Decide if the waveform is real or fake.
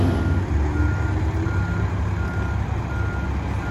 real